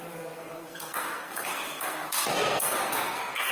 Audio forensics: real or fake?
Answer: fake